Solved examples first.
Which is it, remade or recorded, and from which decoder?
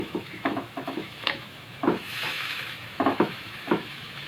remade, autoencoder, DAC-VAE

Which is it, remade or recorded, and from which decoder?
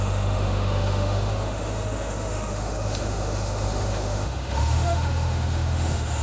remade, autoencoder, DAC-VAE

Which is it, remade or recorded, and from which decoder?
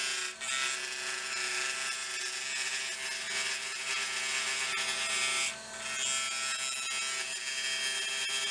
recorded